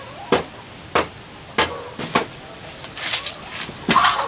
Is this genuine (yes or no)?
yes